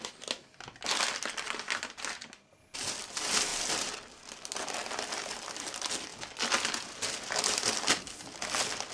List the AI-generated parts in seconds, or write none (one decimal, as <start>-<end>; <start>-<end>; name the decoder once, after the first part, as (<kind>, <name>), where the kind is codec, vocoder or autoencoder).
none